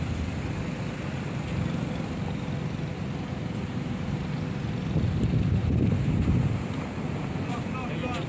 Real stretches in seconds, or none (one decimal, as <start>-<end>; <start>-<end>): 0.0-2.9; 4.2-5.6; 6.4-8.3